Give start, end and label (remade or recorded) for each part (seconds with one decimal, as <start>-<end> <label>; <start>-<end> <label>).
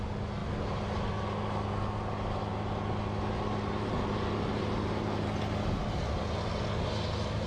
0.0-7.5 recorded